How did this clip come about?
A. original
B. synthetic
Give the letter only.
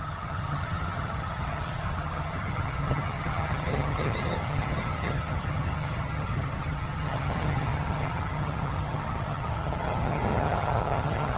B